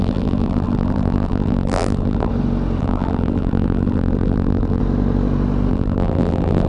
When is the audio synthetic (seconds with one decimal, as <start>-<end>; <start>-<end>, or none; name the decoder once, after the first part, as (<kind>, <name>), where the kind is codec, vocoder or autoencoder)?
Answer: 0.0-2.3 (vocoder, BigVGAN v2); 2.8-4.8; 5.7-6.7